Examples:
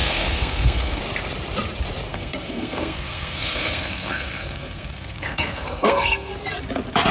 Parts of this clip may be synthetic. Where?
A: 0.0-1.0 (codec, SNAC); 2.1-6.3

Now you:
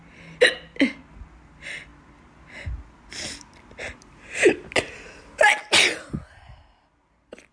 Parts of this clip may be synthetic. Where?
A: none